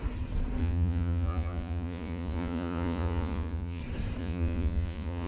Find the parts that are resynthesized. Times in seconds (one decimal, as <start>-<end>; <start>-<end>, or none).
0.6-3.8; 4.2-5.3